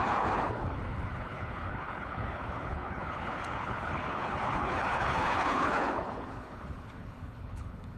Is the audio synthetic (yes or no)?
yes